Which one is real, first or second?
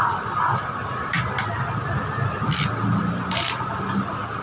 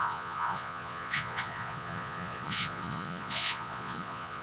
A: first